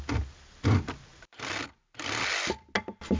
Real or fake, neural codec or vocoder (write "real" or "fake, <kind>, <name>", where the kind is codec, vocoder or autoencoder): real